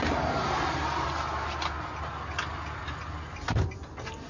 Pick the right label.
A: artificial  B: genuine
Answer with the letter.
B